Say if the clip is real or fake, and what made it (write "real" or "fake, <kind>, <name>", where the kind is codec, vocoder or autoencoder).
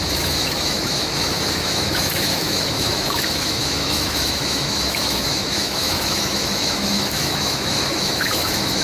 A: fake, autoencoder, DAC-VAE